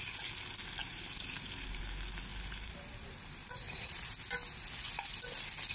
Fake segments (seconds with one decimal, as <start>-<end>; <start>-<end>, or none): 0.8-1.8; 2.3-4.0